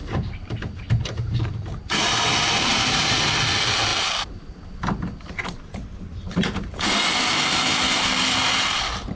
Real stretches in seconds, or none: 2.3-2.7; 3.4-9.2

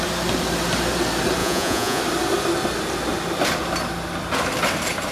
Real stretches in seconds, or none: 0.0-1.4; 2.0-5.1